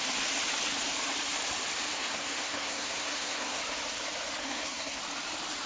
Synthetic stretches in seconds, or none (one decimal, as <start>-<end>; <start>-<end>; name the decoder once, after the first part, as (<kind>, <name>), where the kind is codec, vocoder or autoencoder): 1.9-3.6 (codec, SNAC); 4.4-5.0